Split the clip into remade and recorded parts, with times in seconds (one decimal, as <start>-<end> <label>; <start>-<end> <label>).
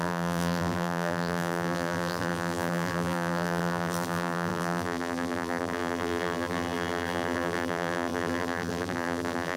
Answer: 0.0-9.6 remade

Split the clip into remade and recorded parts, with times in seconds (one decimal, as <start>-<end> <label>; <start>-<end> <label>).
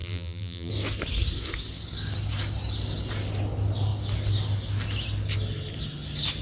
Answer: 0.0-0.7 remade; 0.7-6.4 recorded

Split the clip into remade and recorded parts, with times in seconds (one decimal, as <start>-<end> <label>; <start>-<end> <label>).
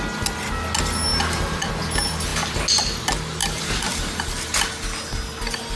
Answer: 0.0-1.1 recorded; 1.1-1.7 remade; 1.7-3.4 recorded; 3.4-4.6 remade; 4.6-5.8 recorded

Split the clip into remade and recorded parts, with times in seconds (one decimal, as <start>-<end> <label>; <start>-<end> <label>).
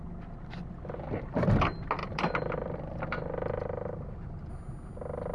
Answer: 0.0-2.0 recorded; 2.0-4.5 remade; 4.5-5.3 recorded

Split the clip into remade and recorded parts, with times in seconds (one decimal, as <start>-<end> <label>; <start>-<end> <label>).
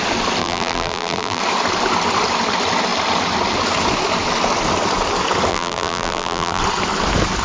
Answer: 0.0-0.4 recorded; 0.4-1.4 remade; 1.4-5.5 recorded; 5.5-6.6 remade; 6.6-7.4 recorded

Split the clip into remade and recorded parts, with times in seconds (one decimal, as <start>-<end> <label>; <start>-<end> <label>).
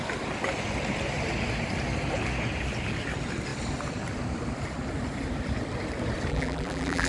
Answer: 0.0-6.3 recorded; 6.3-7.1 remade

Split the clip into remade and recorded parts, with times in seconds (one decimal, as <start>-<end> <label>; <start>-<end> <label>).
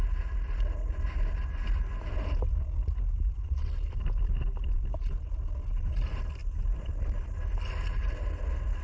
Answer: 0.0-6.4 recorded; 6.4-7.3 remade; 7.3-8.8 recorded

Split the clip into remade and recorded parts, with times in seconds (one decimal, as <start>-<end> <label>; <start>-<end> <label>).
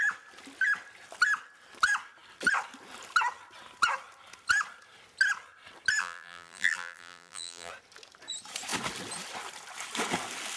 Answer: 0.0-6.0 recorded; 6.0-7.7 remade; 7.7-10.6 recorded